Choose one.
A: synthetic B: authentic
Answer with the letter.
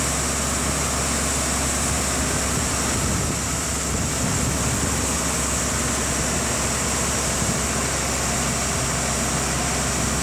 B